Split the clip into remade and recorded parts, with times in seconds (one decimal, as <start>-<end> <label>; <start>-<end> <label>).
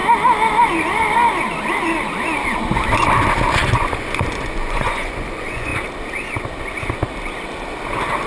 0.0-3.7 recorded; 3.7-5.7 remade; 5.7-8.3 recorded